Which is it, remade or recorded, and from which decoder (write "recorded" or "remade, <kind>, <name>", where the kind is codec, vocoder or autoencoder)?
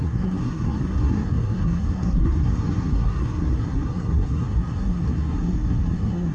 remade, codec, SNAC